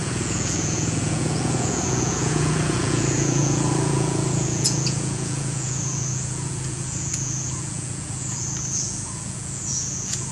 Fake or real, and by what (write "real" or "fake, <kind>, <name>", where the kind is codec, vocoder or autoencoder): fake, vocoder, Vocos